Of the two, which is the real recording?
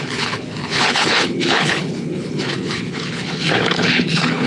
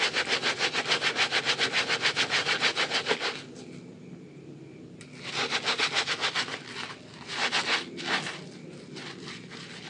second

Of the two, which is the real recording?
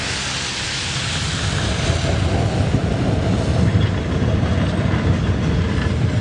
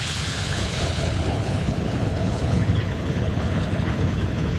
first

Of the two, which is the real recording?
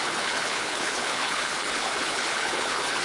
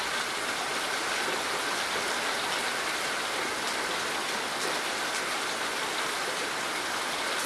second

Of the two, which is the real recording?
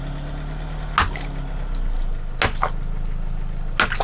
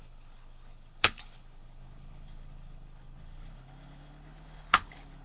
first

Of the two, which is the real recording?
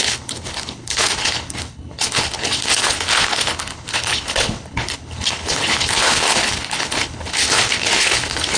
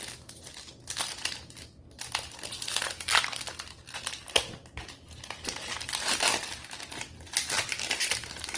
second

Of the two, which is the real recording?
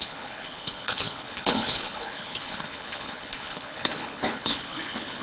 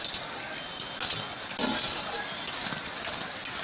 second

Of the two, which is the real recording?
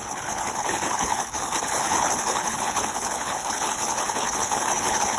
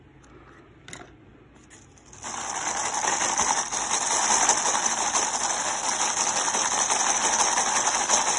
second